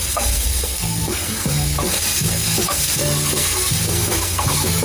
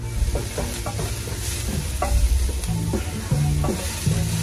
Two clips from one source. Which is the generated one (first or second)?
first